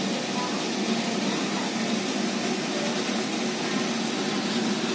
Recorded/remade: recorded